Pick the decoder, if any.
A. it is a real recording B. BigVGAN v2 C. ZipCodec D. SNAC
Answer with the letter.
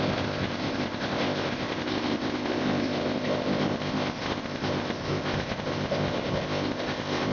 C